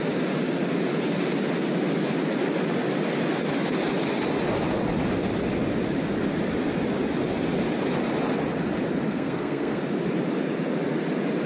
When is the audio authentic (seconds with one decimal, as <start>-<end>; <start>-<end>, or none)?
0.0-9.1; 9.8-11.5

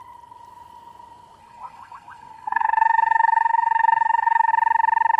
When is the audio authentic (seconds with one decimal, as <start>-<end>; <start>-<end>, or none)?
0.0-1.4; 4.5-5.2

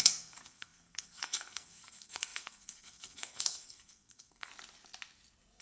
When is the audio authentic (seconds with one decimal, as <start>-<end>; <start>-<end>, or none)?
4.5-5.6

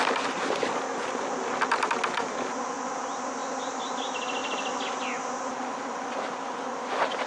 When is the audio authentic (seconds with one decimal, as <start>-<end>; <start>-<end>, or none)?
0.0-7.3

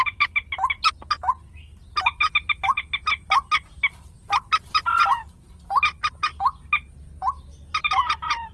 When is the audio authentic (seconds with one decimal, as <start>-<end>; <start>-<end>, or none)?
0.0-8.5